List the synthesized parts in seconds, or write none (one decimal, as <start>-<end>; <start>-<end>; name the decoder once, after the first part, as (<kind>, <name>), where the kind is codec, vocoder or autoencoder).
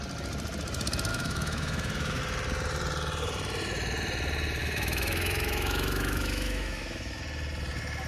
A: 1.1-2.2 (autoencoder, DAC-VAE); 4.6-7.2